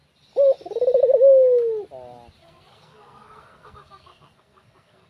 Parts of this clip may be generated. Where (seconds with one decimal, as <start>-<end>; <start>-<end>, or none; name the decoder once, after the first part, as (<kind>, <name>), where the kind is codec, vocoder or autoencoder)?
2.4-5.1 (codec, SNAC)